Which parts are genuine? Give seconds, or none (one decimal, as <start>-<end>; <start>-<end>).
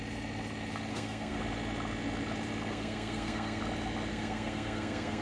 0.0-0.9; 1.4-2.7; 3.6-4.1